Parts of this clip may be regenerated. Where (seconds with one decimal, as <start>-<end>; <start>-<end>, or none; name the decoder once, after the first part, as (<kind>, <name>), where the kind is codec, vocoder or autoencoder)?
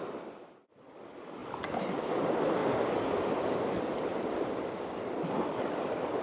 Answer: 0.0-1.4 (vocoder, BigVGAN v2); 2.2-2.6; 3.2-6.2